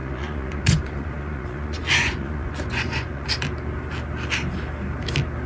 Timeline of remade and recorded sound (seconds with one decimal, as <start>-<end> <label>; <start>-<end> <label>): 0.0-3.3 remade; 3.3-5.5 recorded